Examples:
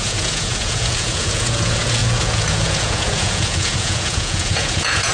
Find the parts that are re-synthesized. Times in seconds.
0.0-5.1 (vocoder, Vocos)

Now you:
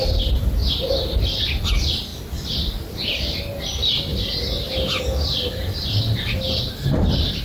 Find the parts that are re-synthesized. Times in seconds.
none

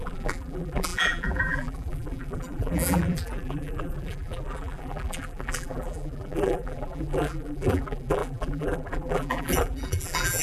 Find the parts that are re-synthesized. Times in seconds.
0.0-10.4 (vocoder, BigVGAN v2)

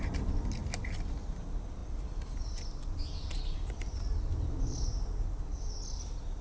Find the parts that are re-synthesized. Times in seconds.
none

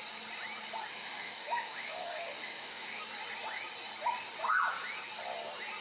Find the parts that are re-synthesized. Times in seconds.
0.9-3.0 (autoencoder, DAC-VAE)